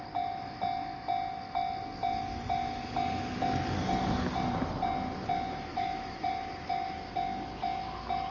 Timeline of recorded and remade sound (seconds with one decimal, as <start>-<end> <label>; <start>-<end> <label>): 0.0-5.7 recorded; 5.7-6.3 remade; 6.3-8.3 recorded